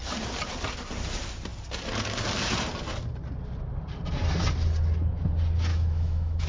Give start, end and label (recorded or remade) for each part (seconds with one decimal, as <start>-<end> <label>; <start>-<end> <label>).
0.0-5.7 recorded; 5.7-6.5 remade